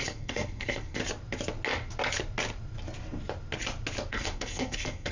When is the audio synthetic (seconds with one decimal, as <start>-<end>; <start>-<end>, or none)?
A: 0.0-1.0; 4.1-5.1